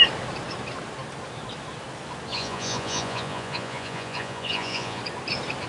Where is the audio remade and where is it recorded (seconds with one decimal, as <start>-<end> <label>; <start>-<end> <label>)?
0.0-2.3 recorded; 2.3-5.0 remade; 5.0-5.7 recorded